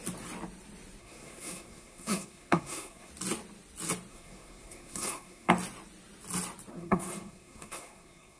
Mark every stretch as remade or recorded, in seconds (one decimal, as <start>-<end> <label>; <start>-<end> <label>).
0.0-1.0 recorded; 1.0-3.1 remade; 3.1-4.1 recorded; 4.1-5.5 remade; 5.5-6.7 recorded; 6.7-8.4 remade